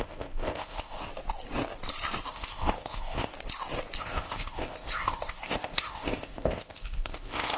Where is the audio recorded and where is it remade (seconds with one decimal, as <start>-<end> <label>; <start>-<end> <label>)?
0.0-1.0 remade; 1.0-2.3 recorded; 2.3-3.3 remade; 3.3-4.0 recorded; 4.0-7.6 remade